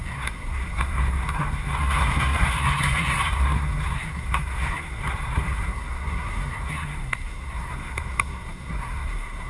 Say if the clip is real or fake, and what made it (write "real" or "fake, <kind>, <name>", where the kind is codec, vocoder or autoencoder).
fake, codec, SNAC